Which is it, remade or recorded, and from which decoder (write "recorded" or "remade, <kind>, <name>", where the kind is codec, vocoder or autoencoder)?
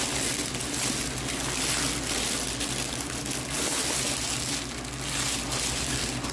recorded